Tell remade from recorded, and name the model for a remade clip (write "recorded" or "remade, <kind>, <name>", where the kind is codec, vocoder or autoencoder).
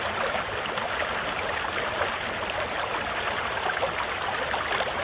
recorded